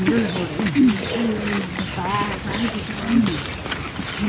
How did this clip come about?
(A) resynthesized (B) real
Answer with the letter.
A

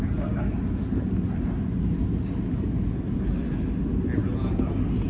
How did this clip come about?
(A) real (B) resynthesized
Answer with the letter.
A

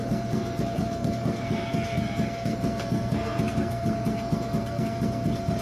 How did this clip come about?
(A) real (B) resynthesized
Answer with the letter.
B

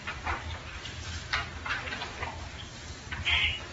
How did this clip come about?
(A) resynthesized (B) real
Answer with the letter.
B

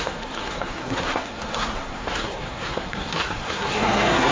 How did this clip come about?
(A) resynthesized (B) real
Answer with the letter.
A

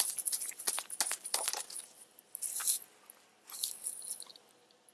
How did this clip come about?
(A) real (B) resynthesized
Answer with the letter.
A